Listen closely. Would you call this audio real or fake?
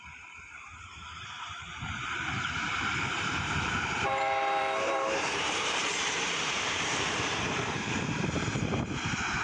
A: fake